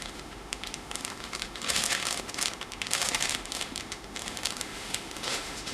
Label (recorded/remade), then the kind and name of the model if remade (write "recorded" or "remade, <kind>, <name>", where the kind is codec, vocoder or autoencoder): remade, autoencoder, DAC-VAE